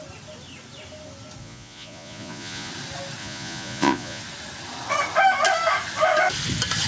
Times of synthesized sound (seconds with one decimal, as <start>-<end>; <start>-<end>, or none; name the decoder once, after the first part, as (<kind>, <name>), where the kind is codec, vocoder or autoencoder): 1.4-2.7 (vocoder, Vocos); 3.2-4.2